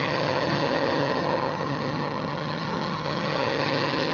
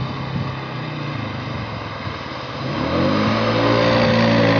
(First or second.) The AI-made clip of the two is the first